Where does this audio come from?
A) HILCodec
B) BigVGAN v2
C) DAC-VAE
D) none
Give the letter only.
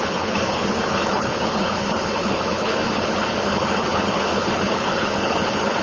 A